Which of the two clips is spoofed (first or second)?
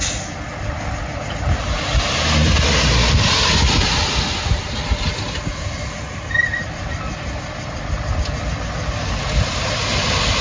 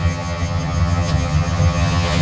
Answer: second